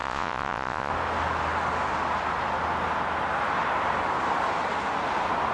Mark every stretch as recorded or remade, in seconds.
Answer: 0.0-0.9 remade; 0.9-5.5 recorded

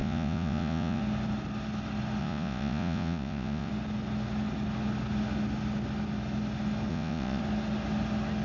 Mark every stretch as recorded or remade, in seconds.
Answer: 0.0-1.0 remade; 1.0-2.2 recorded; 2.2-3.7 remade; 3.7-6.9 recorded; 6.9-7.4 remade; 7.4-8.4 recorded

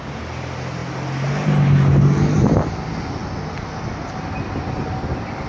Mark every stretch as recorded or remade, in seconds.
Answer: 0.0-5.5 recorded

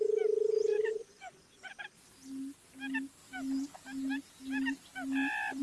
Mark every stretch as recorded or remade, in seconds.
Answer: 0.0-0.7 recorded; 0.7-1.8 remade; 1.8-5.6 recorded

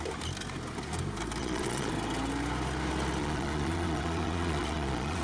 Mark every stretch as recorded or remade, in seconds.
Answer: 0.0-1.4 recorded; 1.4-1.9 remade; 1.9-3.2 recorded; 3.2-5.2 remade

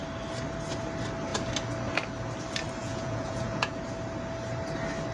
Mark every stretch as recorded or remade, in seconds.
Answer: 0.0-2.8 recorded; 2.8-3.8 remade; 3.8-5.1 recorded

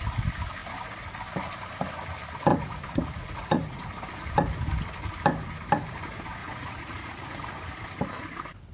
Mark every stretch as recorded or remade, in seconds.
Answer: 0.0-2.5 recorded; 2.5-3.9 remade; 3.9-6.4 recorded; 6.4-7.5 remade; 7.5-8.7 recorded

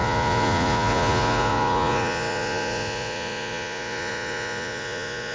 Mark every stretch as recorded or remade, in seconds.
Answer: 0.0-5.3 remade